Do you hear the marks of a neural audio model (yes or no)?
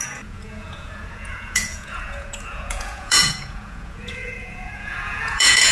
yes